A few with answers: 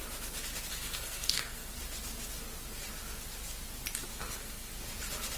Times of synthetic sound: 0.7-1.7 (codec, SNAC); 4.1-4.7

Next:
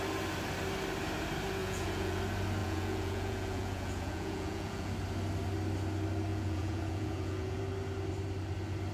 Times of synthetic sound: 1.6-2.2 (vocoder, Vocos); 2.6-4.9; 6.3-7.6

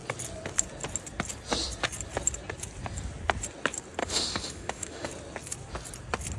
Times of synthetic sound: 4.0-5.1 (autoencoder, DAC-VAE)

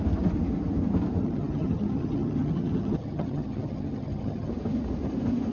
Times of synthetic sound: 1.2-4.5 (vocoder, HiFi-GAN)

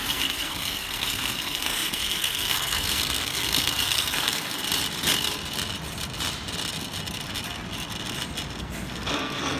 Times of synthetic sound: 0.0-4.6 (codec, SNAC); 8.6-9.6

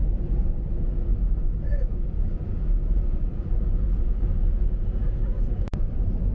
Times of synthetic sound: 1.7-5.2 (vocoder, Vocos)